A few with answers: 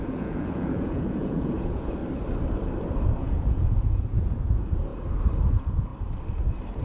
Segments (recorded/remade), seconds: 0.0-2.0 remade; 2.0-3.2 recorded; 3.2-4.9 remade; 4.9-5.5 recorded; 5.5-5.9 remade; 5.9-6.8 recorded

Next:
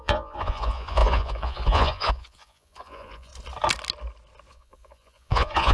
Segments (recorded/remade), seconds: 0.0-3.3 remade; 3.3-4.5 recorded; 4.5-5.7 remade

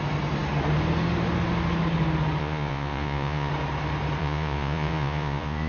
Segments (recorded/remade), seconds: 0.0-2.4 recorded; 2.4-3.5 remade; 3.5-4.2 recorded; 4.2-5.7 remade

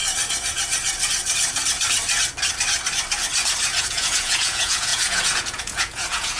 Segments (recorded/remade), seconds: 0.0-3.8 recorded; 3.8-6.4 remade

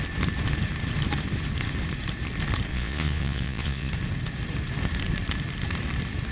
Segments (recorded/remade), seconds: 0.0-2.7 recorded; 2.7-3.9 remade; 3.9-6.3 recorded